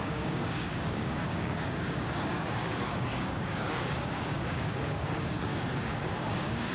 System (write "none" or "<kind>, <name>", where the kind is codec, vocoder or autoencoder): codec, DAC